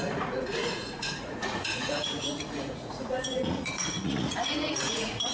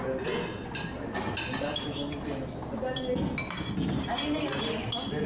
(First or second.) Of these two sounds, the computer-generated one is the first